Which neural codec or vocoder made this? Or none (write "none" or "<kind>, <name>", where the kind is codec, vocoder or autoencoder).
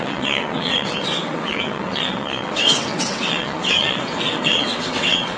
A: vocoder, WaveNeXt